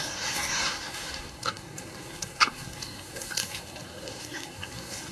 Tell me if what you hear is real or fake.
fake